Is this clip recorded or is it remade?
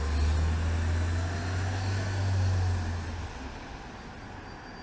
recorded